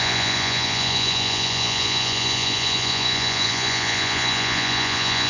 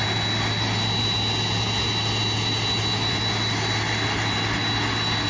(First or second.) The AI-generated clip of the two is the first